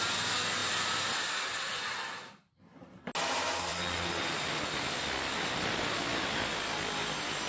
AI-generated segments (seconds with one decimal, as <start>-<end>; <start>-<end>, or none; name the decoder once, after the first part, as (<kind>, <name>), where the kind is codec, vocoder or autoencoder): 0.6-1.2 (vocoder, BigVGAN v2); 3.7-7.5